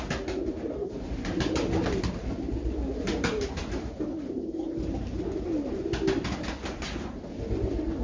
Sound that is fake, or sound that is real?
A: real